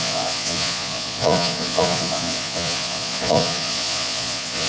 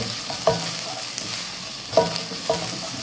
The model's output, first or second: first